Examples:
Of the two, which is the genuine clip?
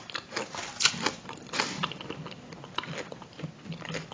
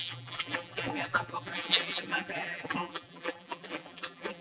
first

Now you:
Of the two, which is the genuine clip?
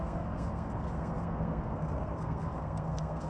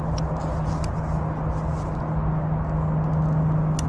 second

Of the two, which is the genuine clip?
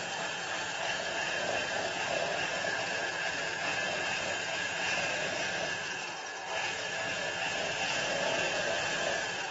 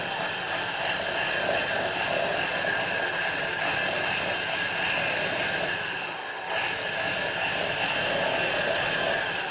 second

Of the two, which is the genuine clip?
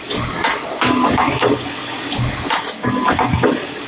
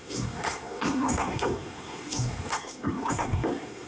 first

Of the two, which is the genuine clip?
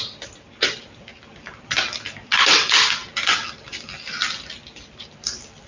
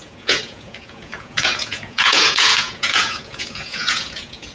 first